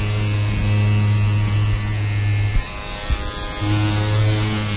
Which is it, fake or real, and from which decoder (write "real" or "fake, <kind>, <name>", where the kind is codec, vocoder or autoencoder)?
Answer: real